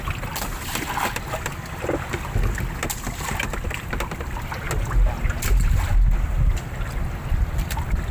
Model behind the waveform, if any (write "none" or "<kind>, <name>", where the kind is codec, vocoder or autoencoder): none